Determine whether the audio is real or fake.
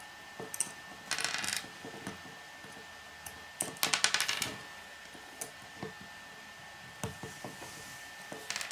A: real